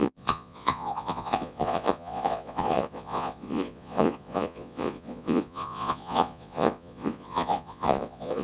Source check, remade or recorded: remade